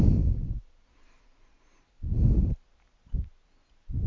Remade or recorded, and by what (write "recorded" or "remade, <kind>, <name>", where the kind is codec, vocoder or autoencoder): recorded